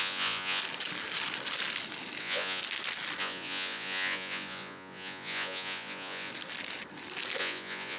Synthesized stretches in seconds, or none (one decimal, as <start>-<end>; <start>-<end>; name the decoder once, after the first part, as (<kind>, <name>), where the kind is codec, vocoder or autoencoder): 0.0-0.6 (vocoder, Vocos); 2.2-2.6; 3.2-6.3; 7.4-8.0